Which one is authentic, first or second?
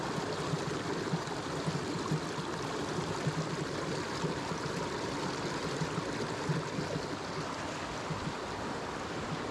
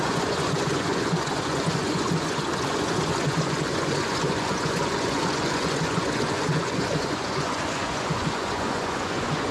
first